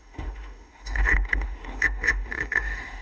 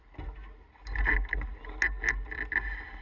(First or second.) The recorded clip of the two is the second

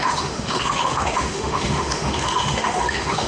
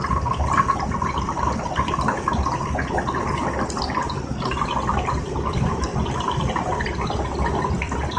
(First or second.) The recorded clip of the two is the second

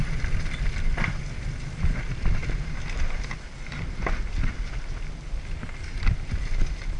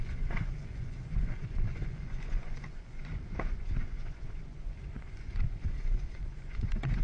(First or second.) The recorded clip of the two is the first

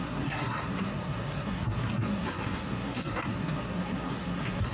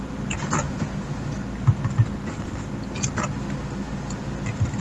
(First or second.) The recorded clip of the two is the second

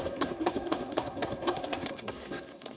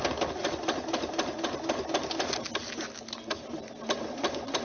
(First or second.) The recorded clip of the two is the second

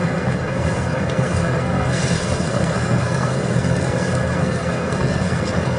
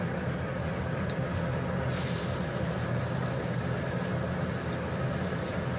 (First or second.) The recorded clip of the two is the second